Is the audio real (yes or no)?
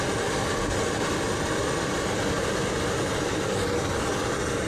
yes